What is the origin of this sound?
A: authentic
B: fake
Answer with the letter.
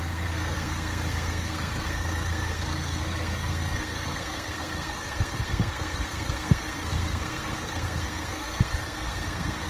B